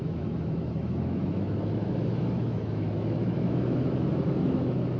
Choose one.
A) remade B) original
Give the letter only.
A